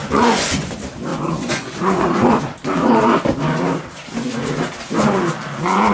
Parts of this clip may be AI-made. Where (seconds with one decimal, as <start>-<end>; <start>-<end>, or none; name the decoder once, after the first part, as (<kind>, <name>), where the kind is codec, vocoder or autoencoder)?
0.0-0.7 (vocoder, Vocos); 1.1-2.3